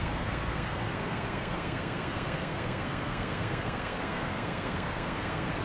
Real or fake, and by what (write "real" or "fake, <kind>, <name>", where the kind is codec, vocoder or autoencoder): fake, codec, SNAC